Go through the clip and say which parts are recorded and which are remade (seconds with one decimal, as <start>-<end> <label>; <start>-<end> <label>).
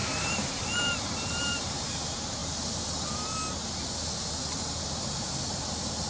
0.0-1.9 remade; 1.9-6.1 recorded